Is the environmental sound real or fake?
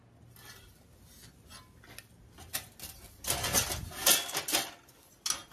real